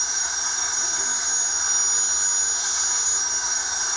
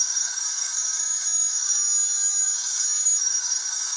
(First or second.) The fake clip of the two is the second